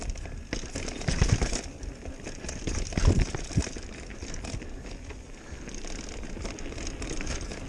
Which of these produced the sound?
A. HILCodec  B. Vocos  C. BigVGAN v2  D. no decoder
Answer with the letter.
D